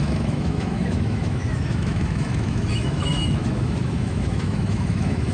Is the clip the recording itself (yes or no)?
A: no